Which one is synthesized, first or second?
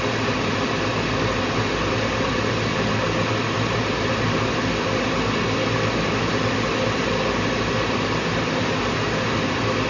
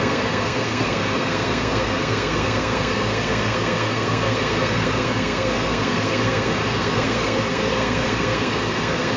second